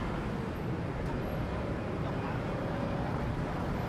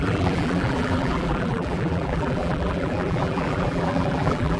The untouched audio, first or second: first